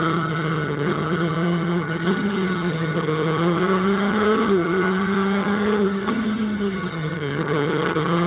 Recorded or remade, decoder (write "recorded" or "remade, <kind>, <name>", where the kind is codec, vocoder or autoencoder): remade, vocoder, HiFi-GAN